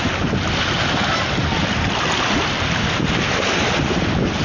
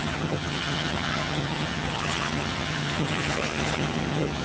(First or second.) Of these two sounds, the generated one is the second